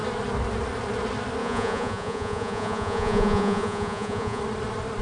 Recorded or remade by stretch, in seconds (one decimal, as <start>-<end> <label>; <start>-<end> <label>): 0.0-1.4 recorded; 1.4-4.4 remade; 4.4-5.0 recorded